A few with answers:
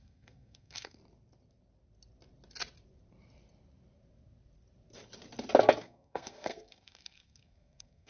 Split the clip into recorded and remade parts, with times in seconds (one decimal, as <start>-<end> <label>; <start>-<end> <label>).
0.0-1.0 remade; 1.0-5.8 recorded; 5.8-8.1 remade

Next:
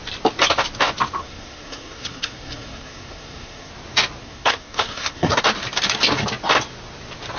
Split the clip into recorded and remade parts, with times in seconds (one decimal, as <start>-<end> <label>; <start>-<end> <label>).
0.0-1.2 recorded; 1.2-3.7 remade; 3.7-4.2 recorded; 4.2-5.4 remade; 5.4-7.4 recorded

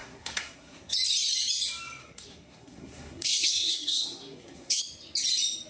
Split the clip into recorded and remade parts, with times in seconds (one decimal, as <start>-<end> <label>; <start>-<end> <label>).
0.0-0.9 remade; 0.9-2.0 recorded; 2.0-4.8 remade; 4.8-5.7 recorded